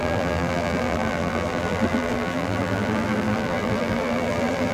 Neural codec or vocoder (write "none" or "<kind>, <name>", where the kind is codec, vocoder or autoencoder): vocoder, BigVGAN v2